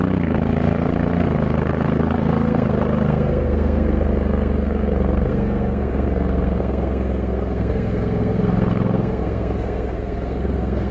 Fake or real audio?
fake